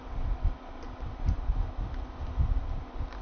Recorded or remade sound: recorded